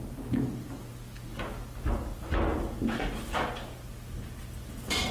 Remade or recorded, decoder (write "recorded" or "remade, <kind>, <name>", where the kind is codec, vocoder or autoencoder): recorded